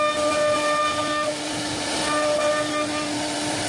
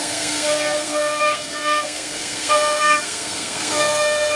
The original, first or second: first